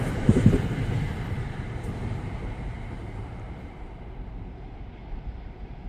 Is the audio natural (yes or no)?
no